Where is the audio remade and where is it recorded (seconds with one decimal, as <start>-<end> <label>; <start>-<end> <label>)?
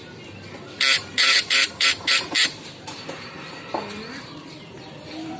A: 0.0-0.9 recorded; 0.9-3.5 remade; 3.5-5.4 recorded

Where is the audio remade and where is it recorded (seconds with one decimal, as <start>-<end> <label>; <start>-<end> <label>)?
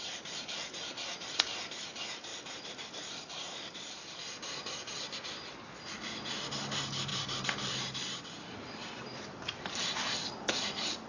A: 0.0-2.3 recorded; 2.3-6.3 remade; 6.3-7.1 recorded; 7.1-9.5 remade; 9.5-11.1 recorded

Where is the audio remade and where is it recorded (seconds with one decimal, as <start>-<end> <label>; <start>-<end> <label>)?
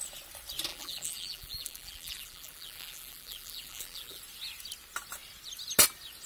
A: 0.0-0.7 recorded; 0.7-4.2 remade; 4.2-6.3 recorded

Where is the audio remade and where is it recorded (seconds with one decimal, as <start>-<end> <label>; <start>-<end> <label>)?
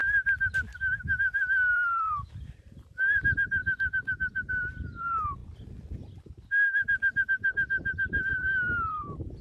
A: 0.0-1.7 recorded; 1.7-3.6 remade; 3.6-4.5 recorded; 4.5-5.4 remade; 5.4-6.2 recorded; 6.2-9.4 remade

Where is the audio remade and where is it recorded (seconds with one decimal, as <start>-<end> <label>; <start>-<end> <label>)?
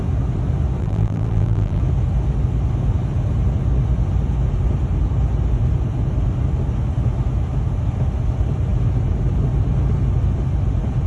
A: 0.0-0.8 recorded; 0.8-1.8 remade; 1.8-11.1 recorded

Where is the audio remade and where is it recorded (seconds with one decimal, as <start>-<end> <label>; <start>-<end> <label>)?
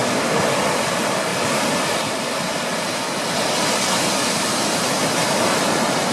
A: 0.0-0.8 recorded; 0.8-1.3 remade; 1.3-5.0 recorded; 5.0-6.1 remade